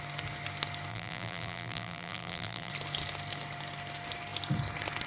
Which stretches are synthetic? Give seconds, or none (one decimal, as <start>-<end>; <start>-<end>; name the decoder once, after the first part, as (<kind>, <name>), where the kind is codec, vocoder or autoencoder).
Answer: 0.9-2.7 (vocoder, BigVGAN v2)